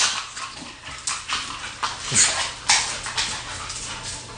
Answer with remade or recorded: recorded